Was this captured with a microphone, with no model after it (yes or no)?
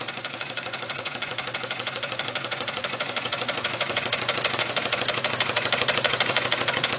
no